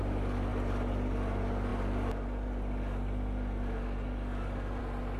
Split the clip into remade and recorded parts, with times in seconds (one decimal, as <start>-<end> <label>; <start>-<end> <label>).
0.0-5.2 recorded

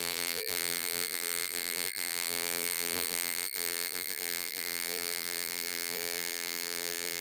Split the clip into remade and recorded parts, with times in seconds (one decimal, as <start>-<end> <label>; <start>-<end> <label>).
0.0-7.2 remade

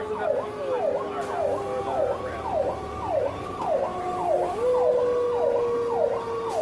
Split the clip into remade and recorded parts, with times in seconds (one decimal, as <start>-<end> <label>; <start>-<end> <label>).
0.0-3.9 recorded; 3.9-4.5 remade; 4.5-6.6 recorded

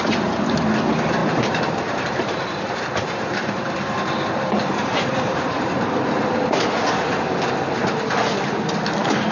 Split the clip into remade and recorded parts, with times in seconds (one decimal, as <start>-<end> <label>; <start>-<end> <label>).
0.0-1.2 recorded; 1.2-6.2 remade; 6.2-9.3 recorded

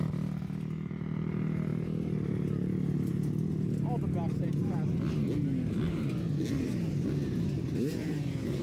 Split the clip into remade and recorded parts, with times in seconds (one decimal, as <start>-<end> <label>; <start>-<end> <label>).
0.0-8.6 recorded